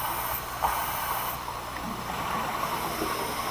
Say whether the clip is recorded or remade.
recorded